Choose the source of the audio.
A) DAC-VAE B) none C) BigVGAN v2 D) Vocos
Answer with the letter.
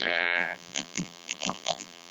C